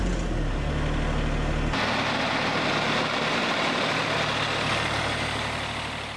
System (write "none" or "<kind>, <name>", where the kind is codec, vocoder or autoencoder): none